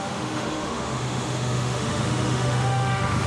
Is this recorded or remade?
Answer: remade